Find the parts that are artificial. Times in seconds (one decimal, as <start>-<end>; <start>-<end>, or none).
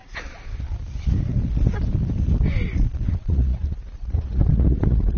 3.1-5.2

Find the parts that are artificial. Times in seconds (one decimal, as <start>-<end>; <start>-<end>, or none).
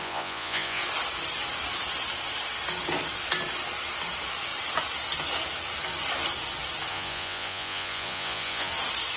0.0-0.8; 6.9-8.7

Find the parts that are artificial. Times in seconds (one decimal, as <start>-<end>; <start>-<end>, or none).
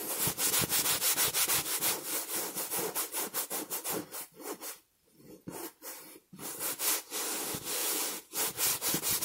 0.0-1.0; 7.8-8.4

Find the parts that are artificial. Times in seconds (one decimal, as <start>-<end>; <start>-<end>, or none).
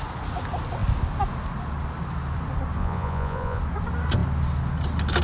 2.8-3.6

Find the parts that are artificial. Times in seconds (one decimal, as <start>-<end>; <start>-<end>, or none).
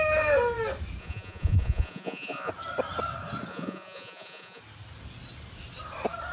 1.0-2.5; 3.5-4.6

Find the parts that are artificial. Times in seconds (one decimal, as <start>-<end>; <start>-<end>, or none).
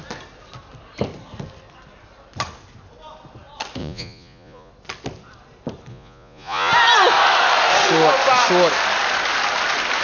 3.8-4.7; 5.9-6.7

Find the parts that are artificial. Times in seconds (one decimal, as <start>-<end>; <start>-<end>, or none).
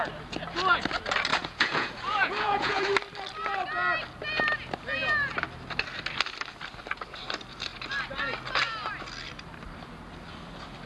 1.3-2.8